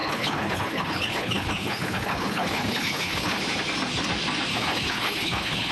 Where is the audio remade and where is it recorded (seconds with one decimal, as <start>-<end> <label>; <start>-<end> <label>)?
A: 0.0-3.4 remade; 3.4-4.5 recorded; 4.5-5.7 remade